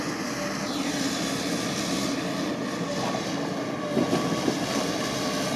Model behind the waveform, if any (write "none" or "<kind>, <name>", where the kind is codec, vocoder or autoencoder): none